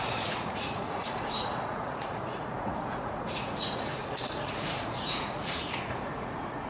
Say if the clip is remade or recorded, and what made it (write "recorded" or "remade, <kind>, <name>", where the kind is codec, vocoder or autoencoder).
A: remade, vocoder, Vocos